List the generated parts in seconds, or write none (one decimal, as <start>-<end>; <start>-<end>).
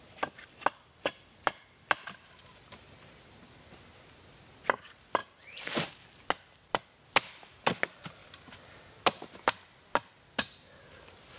none